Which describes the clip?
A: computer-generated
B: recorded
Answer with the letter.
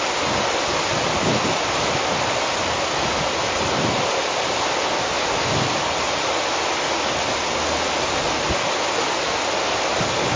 B